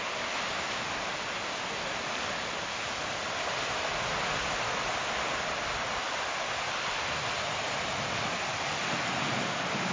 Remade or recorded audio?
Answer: recorded